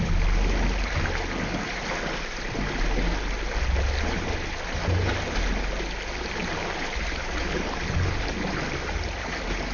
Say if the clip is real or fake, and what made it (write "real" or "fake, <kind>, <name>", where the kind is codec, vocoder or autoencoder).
real